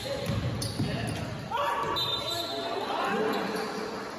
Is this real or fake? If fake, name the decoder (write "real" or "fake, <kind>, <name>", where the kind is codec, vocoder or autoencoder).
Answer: real